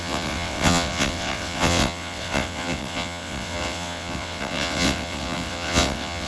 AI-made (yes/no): yes